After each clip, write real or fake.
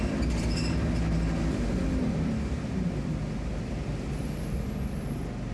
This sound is real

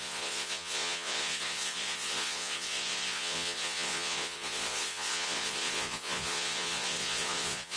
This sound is fake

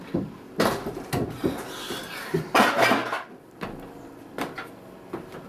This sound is real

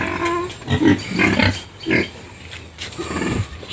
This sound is real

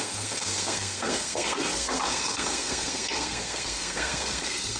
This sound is fake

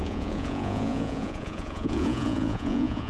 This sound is fake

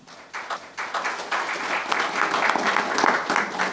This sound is real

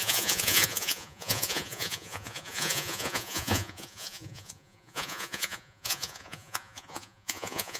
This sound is fake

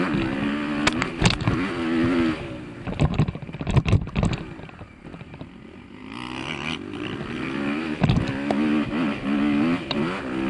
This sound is real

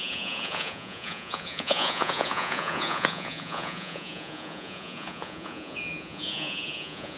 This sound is fake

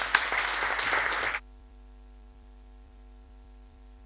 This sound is fake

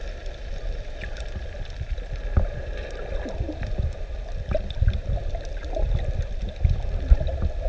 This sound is fake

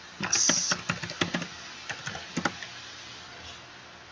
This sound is real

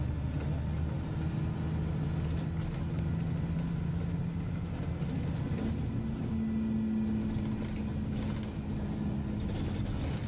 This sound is real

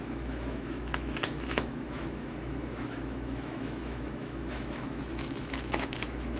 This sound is fake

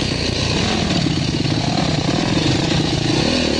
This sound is real